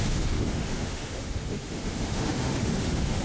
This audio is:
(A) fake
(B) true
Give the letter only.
A